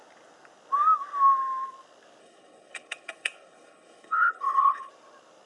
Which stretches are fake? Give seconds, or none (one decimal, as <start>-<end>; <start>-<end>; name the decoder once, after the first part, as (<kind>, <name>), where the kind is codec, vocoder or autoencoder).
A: 2.2-4.9 (codec, HILCodec)

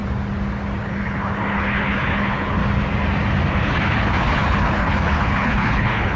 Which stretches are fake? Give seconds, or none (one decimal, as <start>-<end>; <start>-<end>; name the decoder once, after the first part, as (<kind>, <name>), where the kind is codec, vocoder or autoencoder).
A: 0.8-2.6 (codec, HILCodec); 3.5-6.2

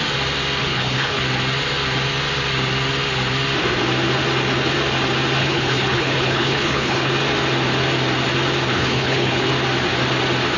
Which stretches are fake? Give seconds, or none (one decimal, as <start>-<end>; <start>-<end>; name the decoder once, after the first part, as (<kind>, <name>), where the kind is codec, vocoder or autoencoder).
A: 0.6-1.2 (codec, HILCodec); 5.4-7.1; 8.7-9.5

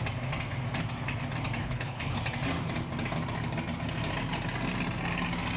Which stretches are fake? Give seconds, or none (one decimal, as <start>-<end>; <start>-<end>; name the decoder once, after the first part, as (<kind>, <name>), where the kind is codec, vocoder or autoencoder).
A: 1.6-2.2 (codec, HILCodec)

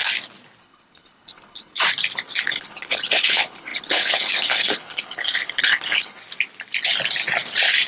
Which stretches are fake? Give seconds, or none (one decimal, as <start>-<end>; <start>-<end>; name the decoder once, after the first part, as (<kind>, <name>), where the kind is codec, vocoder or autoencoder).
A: 0.6-1.7 (codec, HILCodec); 2.4-6.2